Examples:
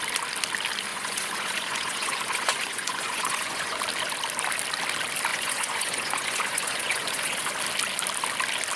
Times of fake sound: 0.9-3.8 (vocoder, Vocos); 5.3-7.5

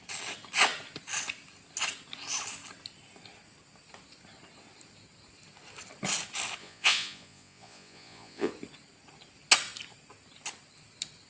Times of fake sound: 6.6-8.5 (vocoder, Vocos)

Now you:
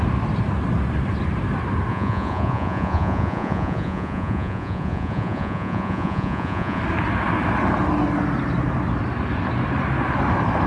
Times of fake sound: 1.9-6.8 (vocoder, Vocos)

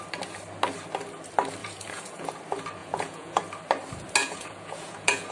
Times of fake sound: 1.6-2.3 (vocoder, Vocos); 2.8-3.4; 4.2-5.3

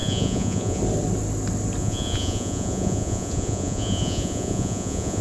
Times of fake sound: 0.0-0.8 (vocoder, Vocos); 1.8-5.2